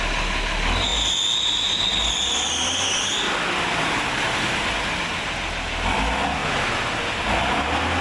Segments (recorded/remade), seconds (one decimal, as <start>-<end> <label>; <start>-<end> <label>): 0.0-8.0 recorded